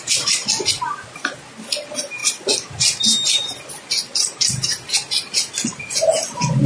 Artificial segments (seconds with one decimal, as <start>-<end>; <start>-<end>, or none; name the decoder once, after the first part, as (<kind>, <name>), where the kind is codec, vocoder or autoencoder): none